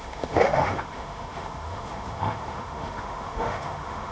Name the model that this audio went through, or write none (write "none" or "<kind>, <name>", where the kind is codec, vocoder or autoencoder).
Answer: autoencoder, DAC-VAE